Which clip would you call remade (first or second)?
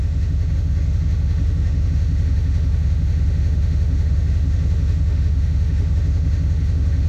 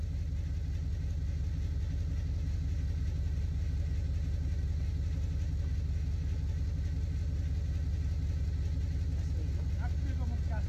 first